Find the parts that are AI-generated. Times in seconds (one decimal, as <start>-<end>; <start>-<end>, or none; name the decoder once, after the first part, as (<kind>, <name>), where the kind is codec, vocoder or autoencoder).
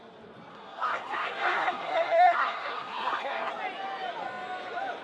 0.5-3.5 (codec, SNAC)